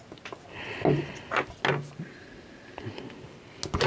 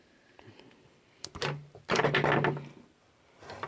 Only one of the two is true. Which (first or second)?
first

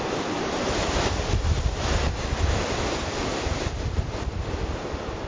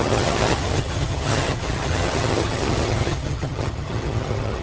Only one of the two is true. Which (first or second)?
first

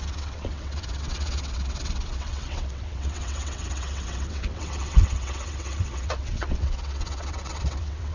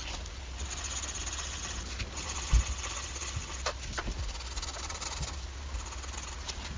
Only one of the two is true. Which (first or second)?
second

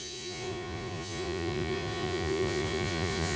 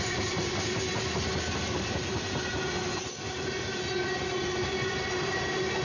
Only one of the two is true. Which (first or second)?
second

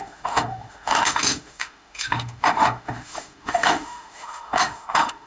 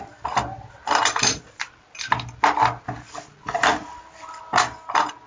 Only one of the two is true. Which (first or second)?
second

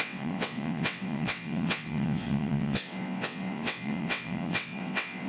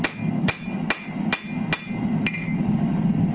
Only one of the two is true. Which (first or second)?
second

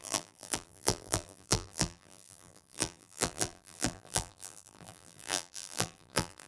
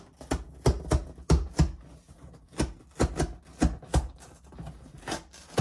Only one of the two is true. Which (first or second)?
second